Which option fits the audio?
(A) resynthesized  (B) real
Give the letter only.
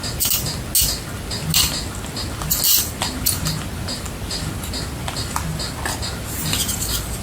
B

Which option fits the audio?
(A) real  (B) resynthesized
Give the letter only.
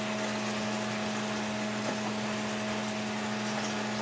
A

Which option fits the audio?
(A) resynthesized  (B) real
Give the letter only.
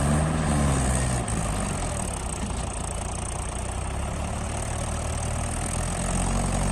B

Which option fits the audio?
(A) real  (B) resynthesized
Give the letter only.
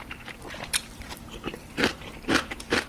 B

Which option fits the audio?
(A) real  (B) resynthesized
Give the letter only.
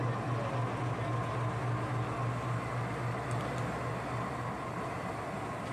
A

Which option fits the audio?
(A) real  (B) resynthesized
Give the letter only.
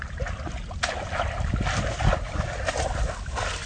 A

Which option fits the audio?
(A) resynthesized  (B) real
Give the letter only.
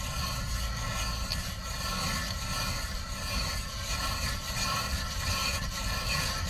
B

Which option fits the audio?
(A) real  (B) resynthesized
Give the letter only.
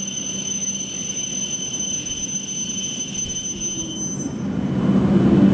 A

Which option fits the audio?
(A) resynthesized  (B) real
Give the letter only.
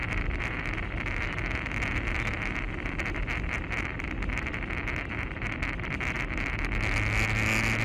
B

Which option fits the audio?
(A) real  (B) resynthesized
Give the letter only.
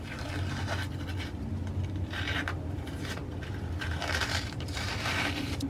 B